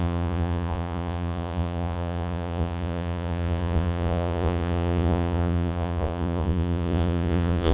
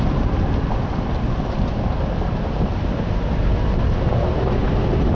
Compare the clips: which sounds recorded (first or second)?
second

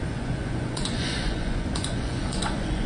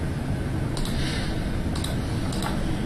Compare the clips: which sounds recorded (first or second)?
second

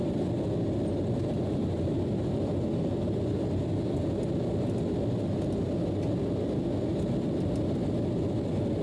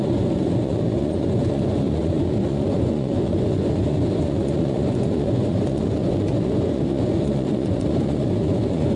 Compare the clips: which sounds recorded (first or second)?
first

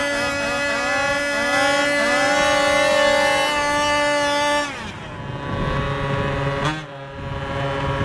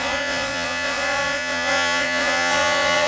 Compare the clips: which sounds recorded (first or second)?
first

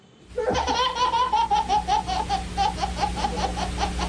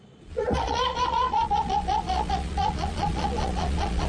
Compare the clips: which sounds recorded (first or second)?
first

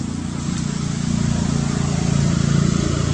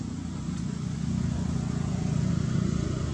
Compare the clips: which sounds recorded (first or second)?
first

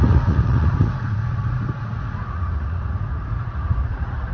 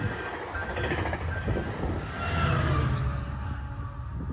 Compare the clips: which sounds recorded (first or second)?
second